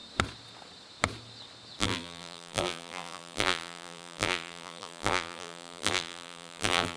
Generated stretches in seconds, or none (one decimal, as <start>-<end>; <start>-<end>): 1.8-7.0